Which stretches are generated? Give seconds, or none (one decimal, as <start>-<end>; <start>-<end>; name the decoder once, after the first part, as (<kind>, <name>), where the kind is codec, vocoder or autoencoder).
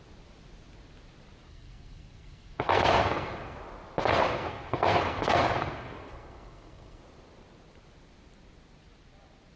1.5-3.6 (codec, SNAC); 4.1-7.0